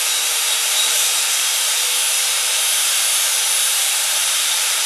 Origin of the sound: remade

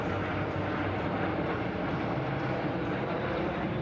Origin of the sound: remade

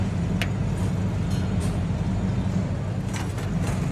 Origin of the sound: recorded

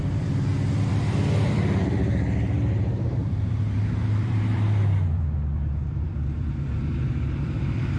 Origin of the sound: remade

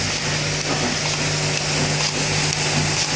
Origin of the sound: recorded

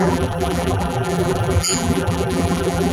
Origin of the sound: remade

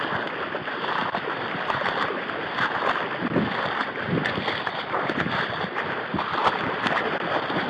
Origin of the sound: recorded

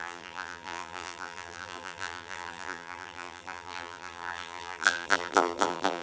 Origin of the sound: remade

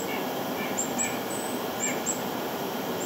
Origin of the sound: recorded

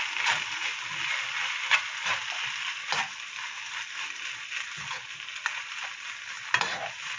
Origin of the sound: recorded